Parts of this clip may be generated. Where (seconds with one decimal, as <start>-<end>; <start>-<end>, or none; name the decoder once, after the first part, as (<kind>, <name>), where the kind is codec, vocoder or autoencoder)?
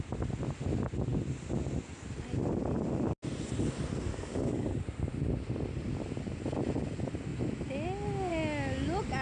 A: 4.1-4.8 (codec, DAC)